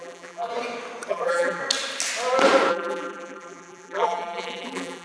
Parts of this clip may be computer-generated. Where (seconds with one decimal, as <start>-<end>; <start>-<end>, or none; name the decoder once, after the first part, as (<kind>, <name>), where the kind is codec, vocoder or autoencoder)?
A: 0.0-0.5 (vocoder, BigVGAN v2); 1.1-1.6; 2.7-5.0